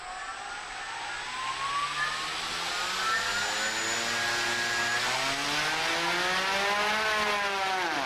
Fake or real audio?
real